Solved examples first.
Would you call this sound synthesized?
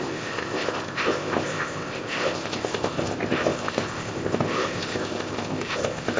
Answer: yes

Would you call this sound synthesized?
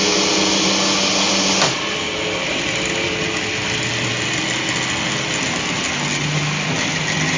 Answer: no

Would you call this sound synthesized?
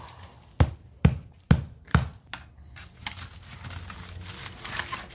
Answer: no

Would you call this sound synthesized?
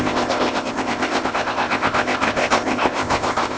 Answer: yes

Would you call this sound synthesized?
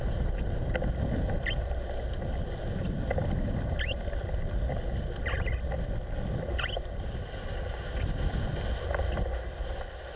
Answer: no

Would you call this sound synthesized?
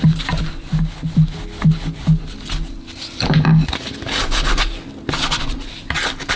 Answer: no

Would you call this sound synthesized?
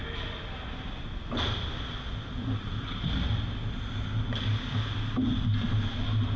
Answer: no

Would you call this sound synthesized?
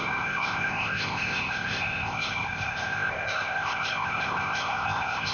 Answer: yes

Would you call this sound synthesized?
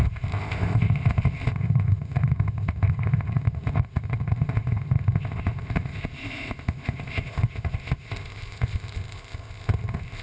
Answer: yes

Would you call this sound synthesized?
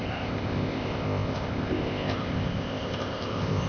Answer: yes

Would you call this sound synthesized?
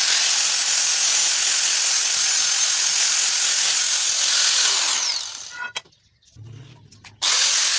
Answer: no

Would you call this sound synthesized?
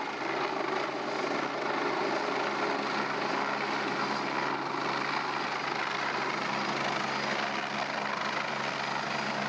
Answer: no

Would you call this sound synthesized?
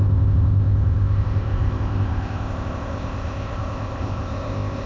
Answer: yes